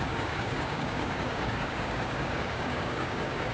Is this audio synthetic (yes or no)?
yes